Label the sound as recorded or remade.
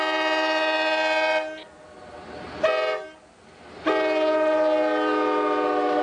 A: recorded